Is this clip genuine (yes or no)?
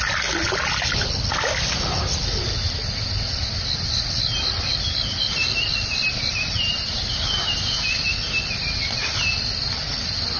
yes